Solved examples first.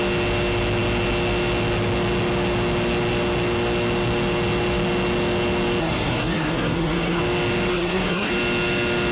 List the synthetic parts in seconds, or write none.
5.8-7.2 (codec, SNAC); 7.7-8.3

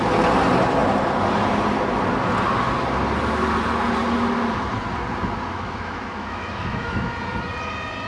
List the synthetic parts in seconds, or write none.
5.5-7.1 (autoencoder, DAC-VAE)

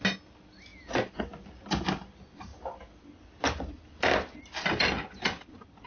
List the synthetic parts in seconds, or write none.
none